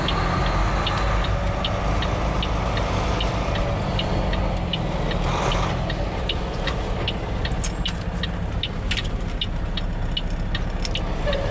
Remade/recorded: recorded